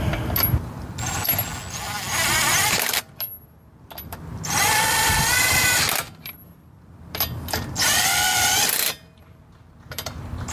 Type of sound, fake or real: real